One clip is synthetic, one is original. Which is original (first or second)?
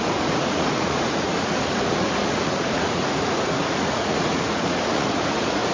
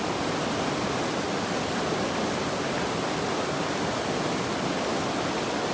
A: second